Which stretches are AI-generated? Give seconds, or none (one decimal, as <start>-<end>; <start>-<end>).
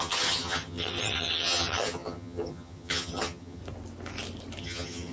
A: 0.0-3.6; 4.6-5.1